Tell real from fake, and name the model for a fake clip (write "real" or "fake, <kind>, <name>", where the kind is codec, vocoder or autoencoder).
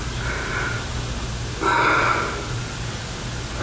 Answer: real